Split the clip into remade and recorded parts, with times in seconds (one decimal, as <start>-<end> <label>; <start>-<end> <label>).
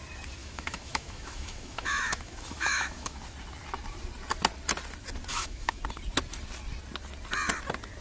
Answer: 0.0-0.4 recorded; 0.4-3.2 remade; 3.2-5.3 recorded; 5.3-5.8 remade; 5.8-8.0 recorded